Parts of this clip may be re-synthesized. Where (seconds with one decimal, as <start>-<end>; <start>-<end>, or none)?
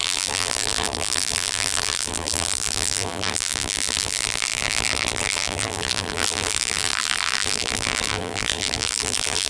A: 0.0-9.5